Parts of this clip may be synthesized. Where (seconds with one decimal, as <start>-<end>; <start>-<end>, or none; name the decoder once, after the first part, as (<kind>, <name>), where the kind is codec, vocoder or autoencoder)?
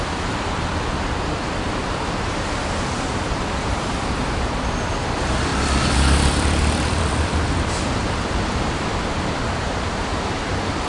0.0-5.5 (vocoder, BigVGAN v2); 6.2-10.9